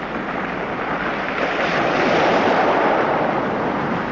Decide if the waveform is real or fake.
real